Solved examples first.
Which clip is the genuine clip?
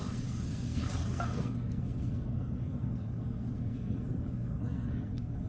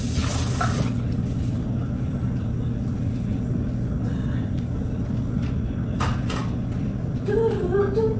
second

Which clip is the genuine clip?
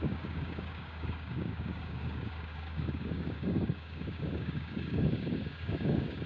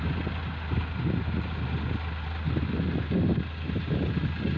second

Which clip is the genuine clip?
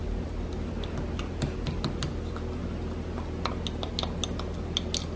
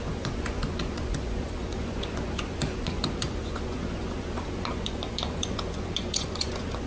first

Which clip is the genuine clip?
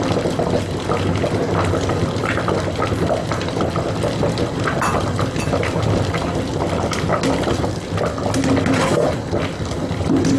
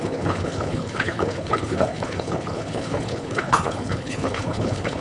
first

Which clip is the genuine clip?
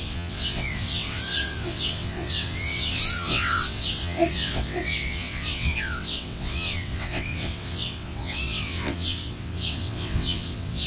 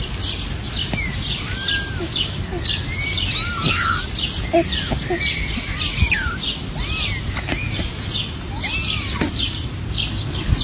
second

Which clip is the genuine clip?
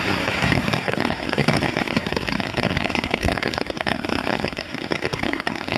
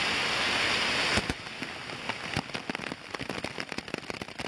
second